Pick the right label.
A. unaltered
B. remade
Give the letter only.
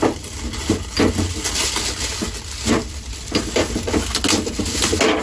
A